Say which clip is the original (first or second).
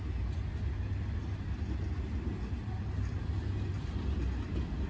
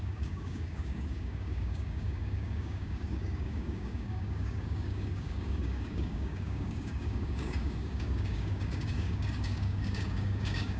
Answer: first